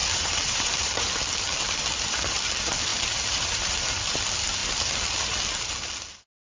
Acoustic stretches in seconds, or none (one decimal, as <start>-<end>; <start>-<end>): 1.1-2.9; 4.0-6.5